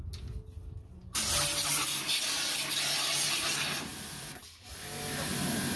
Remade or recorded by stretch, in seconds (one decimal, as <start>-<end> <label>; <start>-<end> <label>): 0.0-1.8 recorded; 1.8-3.0 remade; 3.0-3.9 recorded; 3.9-4.4 remade; 4.4-5.8 recorded